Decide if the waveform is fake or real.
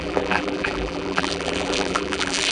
fake